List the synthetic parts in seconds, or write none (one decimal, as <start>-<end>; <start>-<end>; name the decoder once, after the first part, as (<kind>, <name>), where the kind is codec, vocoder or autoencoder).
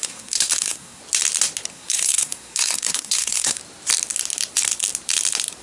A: 0.0-1.0 (codec, SNAC); 1.7-3.6